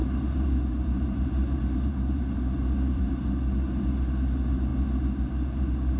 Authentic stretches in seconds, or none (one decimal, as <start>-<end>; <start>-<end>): 3.1-6.0